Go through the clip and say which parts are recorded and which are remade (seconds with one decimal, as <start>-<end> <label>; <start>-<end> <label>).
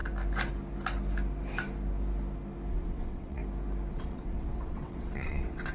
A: 0.0-2.7 recorded; 2.7-3.4 remade; 3.4-3.9 recorded; 3.9-5.7 remade